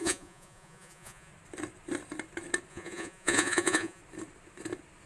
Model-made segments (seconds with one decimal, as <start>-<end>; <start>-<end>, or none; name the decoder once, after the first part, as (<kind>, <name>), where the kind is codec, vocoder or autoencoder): 0.0-1.3 (vocoder, Vocos); 2.7-4.0